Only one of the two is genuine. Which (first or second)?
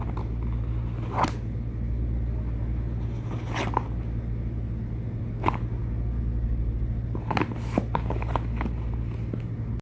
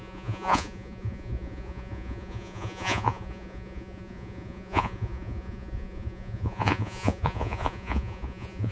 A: first